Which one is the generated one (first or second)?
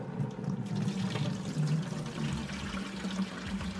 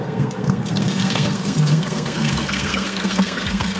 second